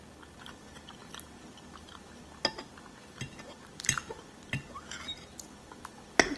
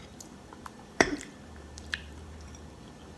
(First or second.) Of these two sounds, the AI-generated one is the second